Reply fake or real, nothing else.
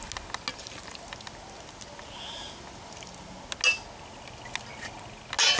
real